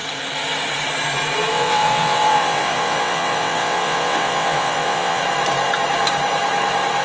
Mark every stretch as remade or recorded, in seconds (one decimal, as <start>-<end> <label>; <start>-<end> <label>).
0.0-1.5 recorded; 1.5-5.2 remade; 5.2-7.0 recorded